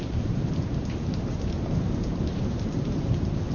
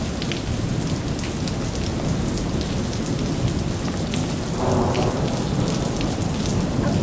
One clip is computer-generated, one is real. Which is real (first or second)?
second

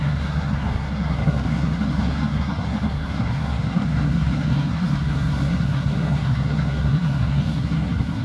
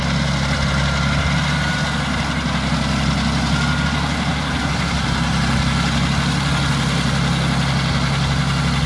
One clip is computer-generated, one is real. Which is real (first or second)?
second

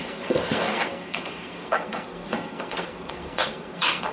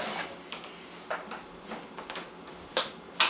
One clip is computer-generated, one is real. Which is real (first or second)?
second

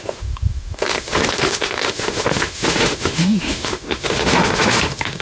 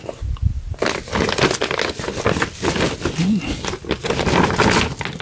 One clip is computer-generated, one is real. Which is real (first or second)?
second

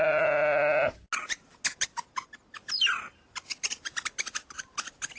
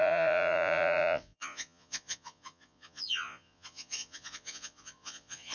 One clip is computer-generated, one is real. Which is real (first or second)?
first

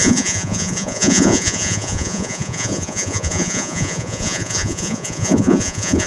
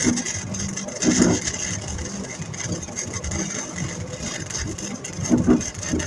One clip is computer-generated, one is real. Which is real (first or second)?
second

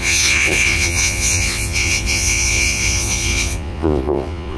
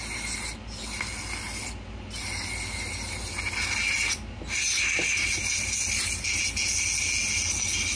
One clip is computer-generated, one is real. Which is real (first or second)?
second